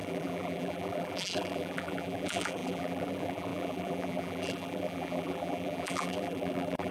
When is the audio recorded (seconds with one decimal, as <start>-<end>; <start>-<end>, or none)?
none